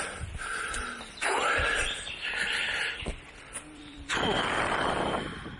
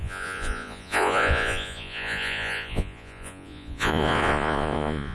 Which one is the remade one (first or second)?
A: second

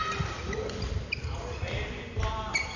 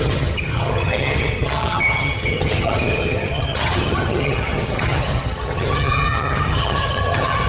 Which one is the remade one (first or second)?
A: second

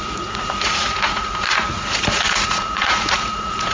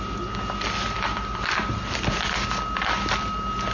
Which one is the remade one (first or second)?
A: first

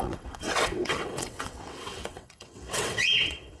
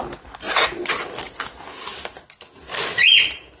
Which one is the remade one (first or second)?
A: first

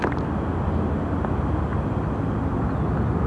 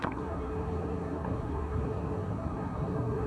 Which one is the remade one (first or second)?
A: second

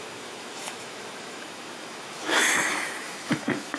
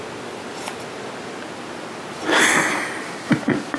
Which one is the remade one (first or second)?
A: first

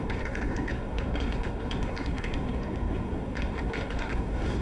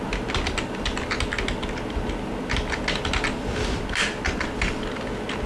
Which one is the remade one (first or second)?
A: first